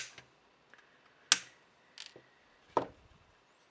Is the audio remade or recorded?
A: recorded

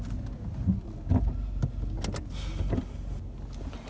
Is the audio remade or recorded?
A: recorded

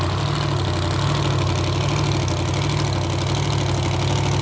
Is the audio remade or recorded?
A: recorded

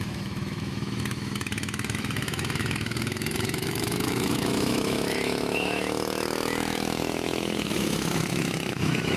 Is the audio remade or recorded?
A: remade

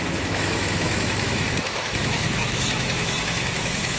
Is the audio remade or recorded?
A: remade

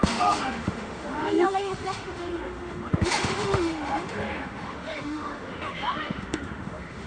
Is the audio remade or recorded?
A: remade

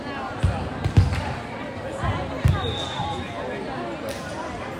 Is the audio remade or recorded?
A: recorded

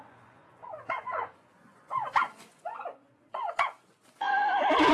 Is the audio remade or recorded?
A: remade